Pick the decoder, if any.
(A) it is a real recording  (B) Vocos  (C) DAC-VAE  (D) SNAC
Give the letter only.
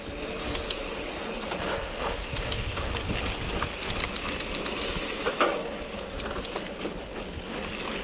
A